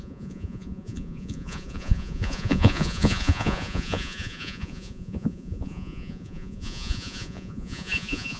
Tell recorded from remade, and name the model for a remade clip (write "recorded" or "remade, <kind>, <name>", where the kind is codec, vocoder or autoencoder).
remade, vocoder, Vocos